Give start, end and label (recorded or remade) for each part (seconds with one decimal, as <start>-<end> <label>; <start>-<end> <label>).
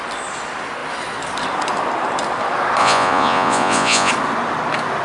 0.0-2.8 recorded; 2.8-4.1 remade; 4.1-5.0 recorded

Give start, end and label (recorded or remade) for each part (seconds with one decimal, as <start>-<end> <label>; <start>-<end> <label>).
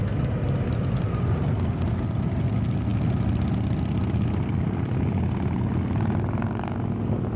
0.0-7.4 recorded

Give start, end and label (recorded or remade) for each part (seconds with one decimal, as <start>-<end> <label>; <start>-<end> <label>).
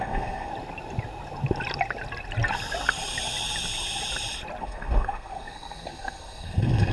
0.0-0.5 remade; 0.5-4.6 recorded; 4.6-6.9 remade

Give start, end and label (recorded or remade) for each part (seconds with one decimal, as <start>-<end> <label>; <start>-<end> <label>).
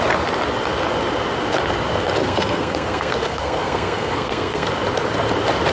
0.0-2.2 recorded; 2.2-4.7 remade; 4.7-5.7 recorded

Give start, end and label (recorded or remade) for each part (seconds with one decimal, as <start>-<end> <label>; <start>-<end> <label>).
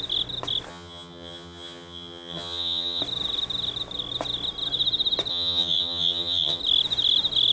0.0-0.7 recorded; 0.7-3.0 remade; 3.0-5.3 recorded; 5.3-6.6 remade; 6.6-7.5 recorded